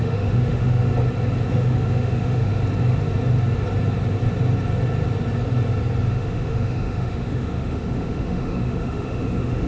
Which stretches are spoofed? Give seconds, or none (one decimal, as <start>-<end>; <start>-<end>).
0.0-0.9; 1.5-2.6; 6.1-9.7